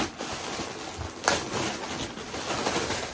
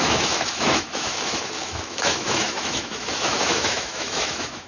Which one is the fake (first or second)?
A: second